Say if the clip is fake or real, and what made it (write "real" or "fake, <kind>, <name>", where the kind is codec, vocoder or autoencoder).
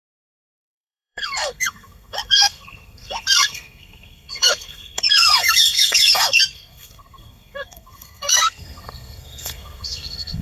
fake, codec, SNAC